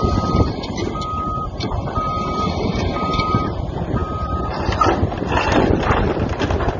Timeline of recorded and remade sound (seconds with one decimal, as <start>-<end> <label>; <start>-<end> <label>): 0.0-6.8 recorded